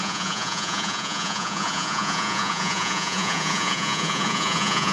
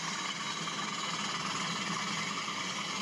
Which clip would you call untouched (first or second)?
second